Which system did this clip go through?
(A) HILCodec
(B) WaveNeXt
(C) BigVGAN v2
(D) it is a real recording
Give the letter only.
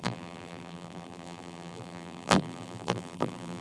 C